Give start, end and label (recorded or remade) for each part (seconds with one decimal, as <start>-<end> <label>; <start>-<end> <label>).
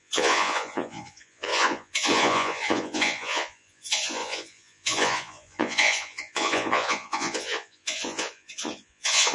0.0-9.3 remade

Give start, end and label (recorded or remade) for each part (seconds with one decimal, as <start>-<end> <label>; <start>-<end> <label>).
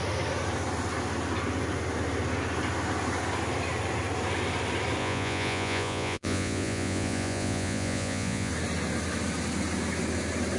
0.0-5.0 recorded; 5.0-8.5 remade; 8.5-10.6 recorded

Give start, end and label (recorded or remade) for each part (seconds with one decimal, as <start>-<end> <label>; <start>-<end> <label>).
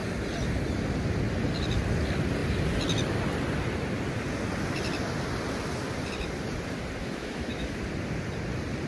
0.0-7.0 recorded; 7.0-7.8 remade; 7.8-8.9 recorded